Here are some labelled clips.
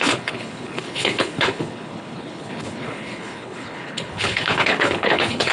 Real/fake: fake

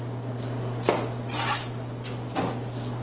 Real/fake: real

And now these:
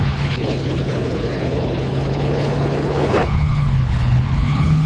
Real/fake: fake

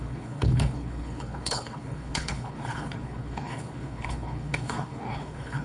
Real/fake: fake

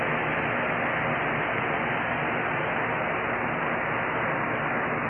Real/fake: real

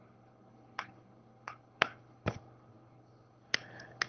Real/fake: fake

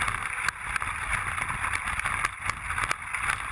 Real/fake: real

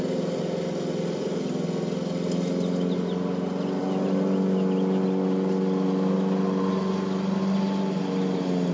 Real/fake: real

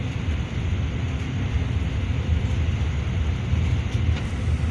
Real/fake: real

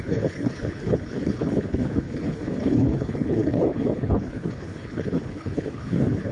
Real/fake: fake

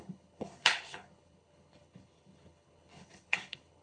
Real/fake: fake